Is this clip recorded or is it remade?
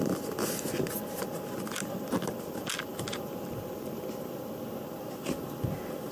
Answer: recorded